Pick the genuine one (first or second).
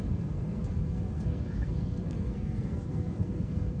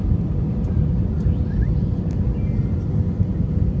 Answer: second